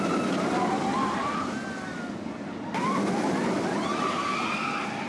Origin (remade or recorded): recorded